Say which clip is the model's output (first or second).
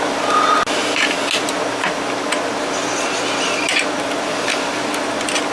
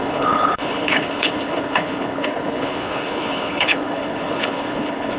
second